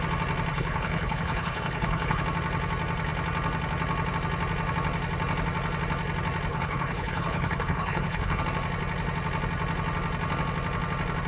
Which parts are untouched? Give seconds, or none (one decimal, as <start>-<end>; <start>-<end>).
0.0-0.5; 2.2-6.5; 8.4-11.3